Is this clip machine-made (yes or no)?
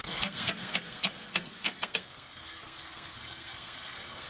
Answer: yes